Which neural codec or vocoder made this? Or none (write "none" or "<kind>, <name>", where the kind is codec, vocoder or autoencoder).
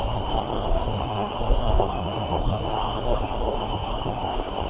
codec, SNAC